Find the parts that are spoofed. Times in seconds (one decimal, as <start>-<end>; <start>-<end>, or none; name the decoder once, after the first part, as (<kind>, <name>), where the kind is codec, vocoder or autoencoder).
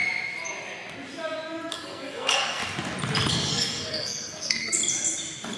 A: 1.7-2.6 (codec, SNAC); 3.3-4.8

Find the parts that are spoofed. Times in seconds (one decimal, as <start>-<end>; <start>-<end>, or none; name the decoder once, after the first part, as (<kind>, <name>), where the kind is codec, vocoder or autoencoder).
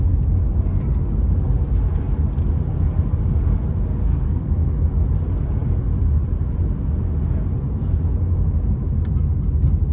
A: 4.0-4.7 (codec, SNAC)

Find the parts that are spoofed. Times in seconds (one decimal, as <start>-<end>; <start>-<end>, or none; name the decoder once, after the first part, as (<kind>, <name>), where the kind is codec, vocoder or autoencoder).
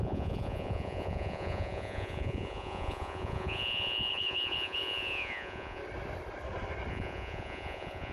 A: 0.0-5.8 (vocoder, Vocos); 6.9-8.1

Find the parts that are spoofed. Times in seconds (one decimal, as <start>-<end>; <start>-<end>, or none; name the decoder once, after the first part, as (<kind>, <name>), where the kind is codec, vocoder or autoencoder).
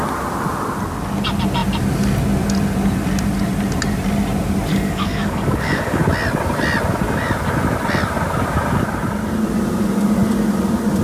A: 4.7-6.0 (codec, DAC)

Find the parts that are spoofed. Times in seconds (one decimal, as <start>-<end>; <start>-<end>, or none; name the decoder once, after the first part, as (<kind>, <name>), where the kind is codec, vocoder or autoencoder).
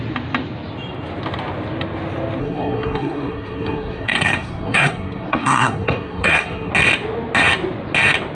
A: 2.4-6.7 (codec, SNAC)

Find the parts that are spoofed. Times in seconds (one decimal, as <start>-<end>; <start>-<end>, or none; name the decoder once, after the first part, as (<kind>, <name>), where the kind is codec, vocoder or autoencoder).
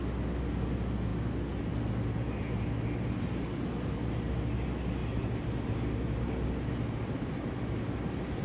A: none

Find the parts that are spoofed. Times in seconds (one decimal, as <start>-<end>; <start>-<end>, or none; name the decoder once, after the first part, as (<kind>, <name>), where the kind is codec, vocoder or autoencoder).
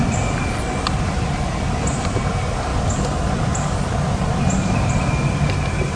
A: none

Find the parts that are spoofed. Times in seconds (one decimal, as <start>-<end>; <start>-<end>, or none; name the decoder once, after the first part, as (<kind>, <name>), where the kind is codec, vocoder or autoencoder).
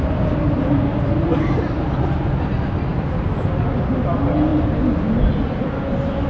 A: none